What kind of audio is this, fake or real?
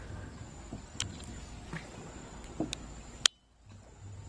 real